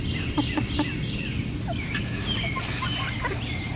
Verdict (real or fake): fake